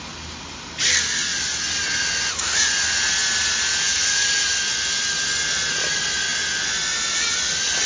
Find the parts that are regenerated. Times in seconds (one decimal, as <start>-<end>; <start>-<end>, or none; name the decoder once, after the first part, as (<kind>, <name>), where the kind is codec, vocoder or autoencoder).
none